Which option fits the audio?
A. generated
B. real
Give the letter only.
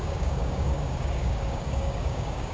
A